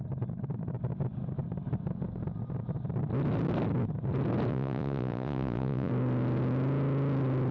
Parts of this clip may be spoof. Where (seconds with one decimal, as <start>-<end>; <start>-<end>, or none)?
4.5-5.9